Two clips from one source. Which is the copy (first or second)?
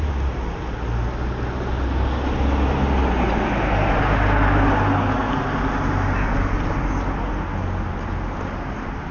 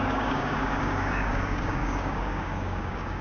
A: second